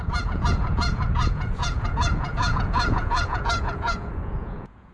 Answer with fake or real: fake